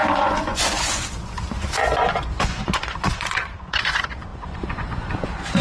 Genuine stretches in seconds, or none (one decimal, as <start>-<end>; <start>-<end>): none